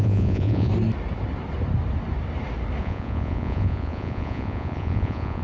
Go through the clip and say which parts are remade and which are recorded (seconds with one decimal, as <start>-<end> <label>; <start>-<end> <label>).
0.0-0.7 remade; 0.7-2.8 recorded; 2.8-5.4 remade